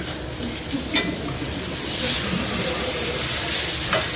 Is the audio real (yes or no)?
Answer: yes